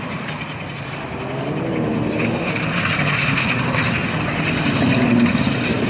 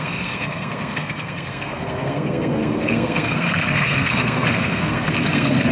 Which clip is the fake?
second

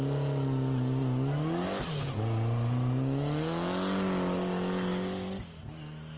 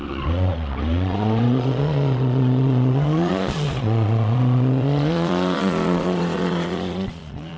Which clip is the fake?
second